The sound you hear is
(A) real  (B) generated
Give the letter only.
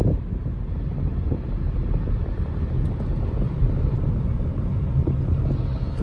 A